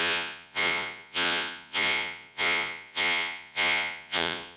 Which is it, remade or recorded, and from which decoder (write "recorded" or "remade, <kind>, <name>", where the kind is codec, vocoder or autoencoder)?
remade, vocoder, Vocos